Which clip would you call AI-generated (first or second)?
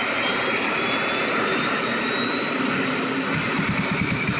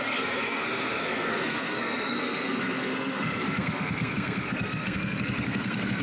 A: second